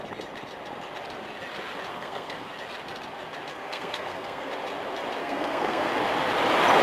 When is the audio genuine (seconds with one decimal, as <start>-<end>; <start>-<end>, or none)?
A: 0.0-1.9; 2.5-3.5; 4.5-5.2; 5.9-6.8